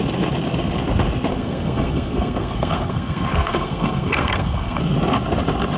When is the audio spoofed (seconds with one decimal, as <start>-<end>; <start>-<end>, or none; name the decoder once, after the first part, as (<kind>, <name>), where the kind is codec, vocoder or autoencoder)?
1.3-4.8 (codec, SNAC)